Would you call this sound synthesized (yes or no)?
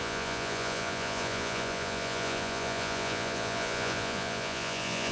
yes